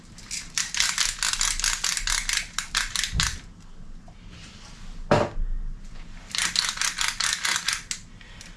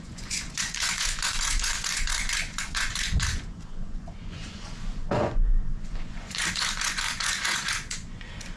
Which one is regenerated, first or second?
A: second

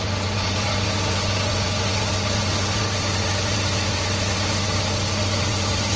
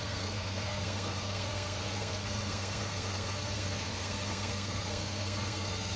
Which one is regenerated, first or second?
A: second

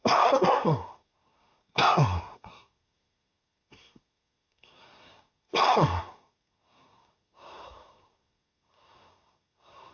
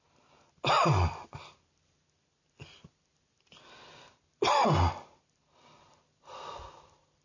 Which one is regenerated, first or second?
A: first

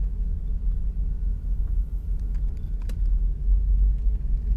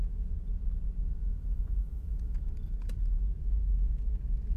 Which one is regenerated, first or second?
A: second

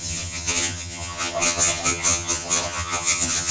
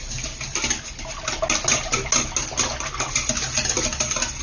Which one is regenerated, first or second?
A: first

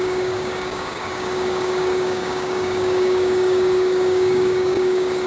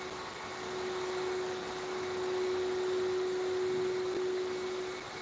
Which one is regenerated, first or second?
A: first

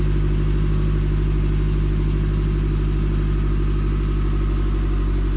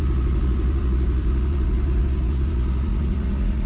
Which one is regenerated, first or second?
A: second